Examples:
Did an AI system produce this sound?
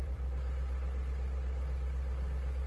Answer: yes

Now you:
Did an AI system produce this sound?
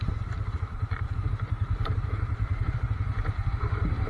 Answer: yes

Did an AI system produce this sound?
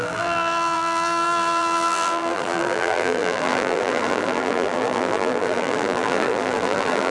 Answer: yes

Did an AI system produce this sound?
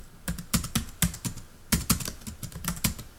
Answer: no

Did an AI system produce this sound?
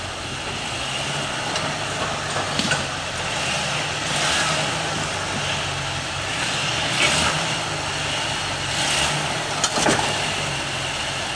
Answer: no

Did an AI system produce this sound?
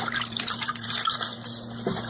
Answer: yes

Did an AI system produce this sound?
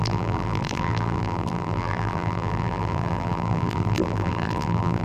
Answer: yes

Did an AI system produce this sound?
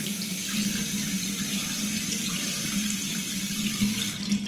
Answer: yes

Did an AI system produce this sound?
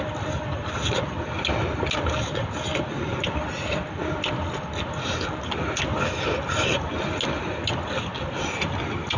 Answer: no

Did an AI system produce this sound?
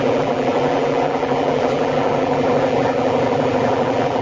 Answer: yes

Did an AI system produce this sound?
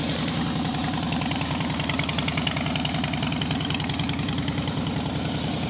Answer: yes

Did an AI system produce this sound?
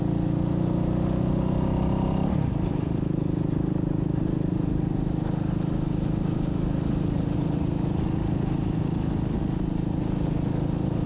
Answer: no